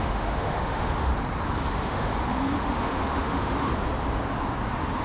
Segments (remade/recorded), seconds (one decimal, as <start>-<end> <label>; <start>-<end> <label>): 0.0-1.1 remade; 1.1-1.7 recorded; 1.7-2.1 remade; 2.1-2.7 recorded; 2.7-3.7 remade; 3.7-5.0 recorded